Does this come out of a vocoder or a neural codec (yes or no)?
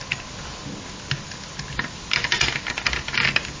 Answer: no